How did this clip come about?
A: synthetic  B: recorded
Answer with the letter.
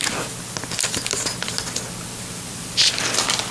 B